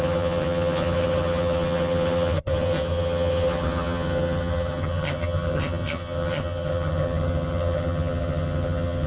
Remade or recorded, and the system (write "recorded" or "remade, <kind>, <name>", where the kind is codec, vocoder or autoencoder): remade, vocoder, HiFi-GAN